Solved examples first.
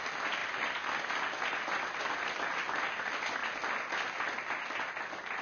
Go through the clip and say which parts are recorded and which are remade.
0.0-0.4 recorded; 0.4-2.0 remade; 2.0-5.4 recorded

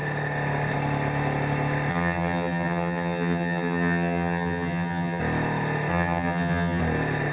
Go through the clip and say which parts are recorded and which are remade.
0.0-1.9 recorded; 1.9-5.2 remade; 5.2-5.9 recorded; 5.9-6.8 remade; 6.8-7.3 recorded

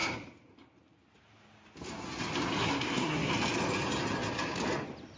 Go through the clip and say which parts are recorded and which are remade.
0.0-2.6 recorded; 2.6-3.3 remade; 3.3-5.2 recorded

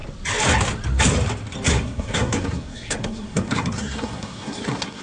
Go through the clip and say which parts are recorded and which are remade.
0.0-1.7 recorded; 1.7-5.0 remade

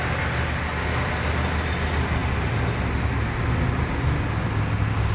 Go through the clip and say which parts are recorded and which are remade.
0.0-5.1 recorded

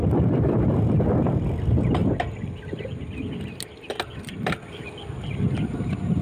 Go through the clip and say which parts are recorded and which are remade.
0.0-0.8 remade; 0.8-6.2 recorded

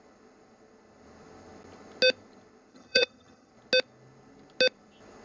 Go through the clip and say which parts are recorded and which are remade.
0.0-2.7 recorded; 2.7-3.5 remade; 3.5-5.2 recorded

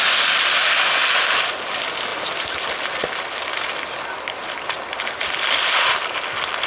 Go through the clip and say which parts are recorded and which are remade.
0.0-6.7 recorded